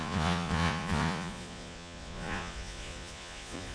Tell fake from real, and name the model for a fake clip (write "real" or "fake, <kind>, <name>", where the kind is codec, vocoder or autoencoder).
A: fake, vocoder, Vocos